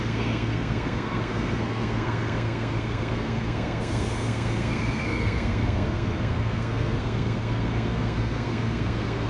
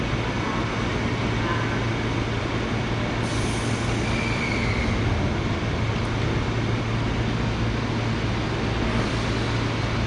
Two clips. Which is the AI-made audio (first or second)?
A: first